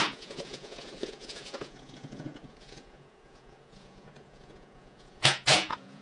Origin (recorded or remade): remade